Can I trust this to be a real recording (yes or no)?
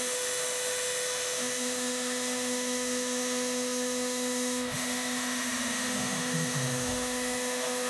no